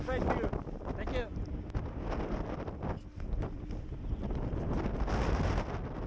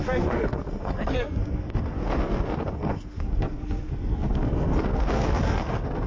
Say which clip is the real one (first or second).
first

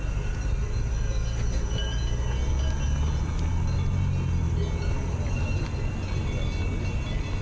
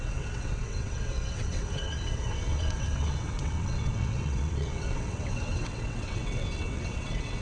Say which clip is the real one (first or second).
first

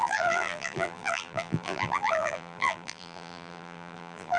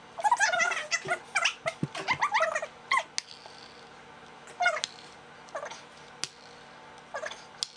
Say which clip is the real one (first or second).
second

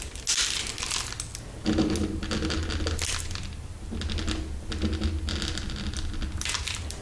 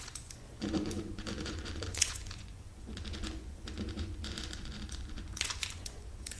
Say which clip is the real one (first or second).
first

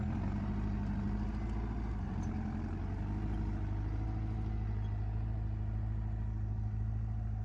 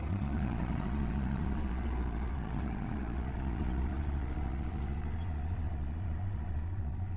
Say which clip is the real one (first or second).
first